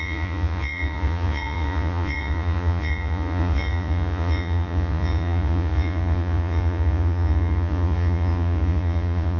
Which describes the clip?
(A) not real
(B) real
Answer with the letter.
A